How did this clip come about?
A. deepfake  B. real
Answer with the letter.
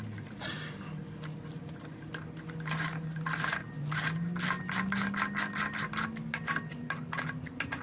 B